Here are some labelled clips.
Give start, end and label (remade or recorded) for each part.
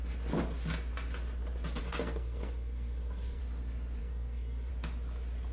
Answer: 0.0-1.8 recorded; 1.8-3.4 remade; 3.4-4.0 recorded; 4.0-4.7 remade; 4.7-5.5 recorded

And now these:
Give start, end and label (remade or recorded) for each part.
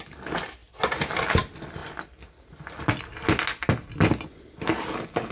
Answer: 0.0-5.3 recorded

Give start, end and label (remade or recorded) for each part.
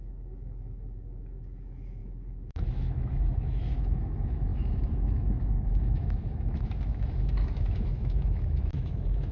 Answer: 0.0-9.3 remade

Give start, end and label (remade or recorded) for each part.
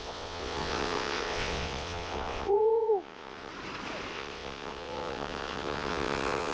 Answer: 0.0-3.5 remade; 3.5-4.1 recorded; 4.1-6.5 remade